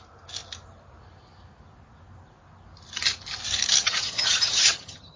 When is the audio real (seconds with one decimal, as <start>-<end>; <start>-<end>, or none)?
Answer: 0.0-3.8